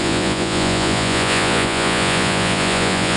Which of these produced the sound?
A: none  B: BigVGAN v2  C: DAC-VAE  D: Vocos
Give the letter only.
D